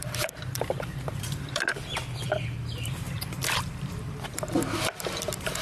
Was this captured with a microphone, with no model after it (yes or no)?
no